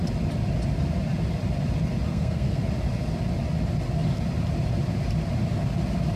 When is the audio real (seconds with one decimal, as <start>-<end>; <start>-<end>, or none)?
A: 0.0-2.1; 2.6-6.2